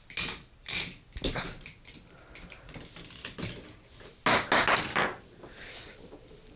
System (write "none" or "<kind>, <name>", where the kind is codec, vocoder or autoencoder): none